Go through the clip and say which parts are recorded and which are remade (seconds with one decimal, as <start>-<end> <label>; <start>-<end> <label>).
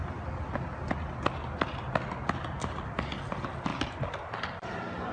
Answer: 0.0-5.1 recorded